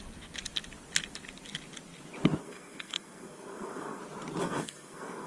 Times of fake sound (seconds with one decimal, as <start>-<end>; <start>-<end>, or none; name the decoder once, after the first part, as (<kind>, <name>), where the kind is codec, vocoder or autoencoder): 2.4-4.0 (codec, SNAC); 4.4-5.3